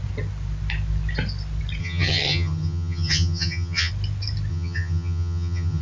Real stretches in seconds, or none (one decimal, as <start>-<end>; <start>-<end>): 0.0-1.8; 3.9-4.5